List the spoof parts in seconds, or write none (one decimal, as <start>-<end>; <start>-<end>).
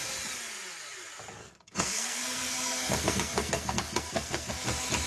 1.4-4.5